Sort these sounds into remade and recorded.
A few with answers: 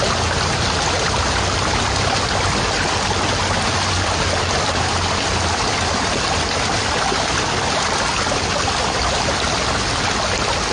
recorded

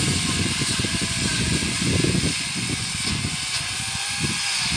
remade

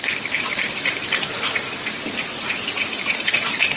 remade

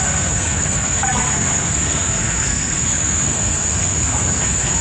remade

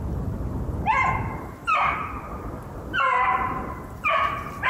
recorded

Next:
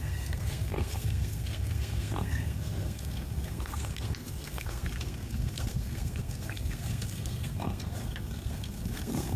remade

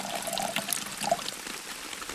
recorded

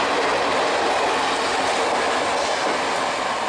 recorded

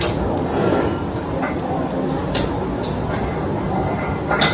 recorded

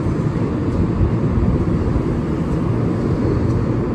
recorded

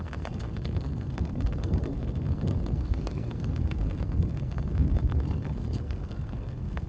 remade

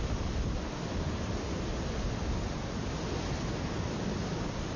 recorded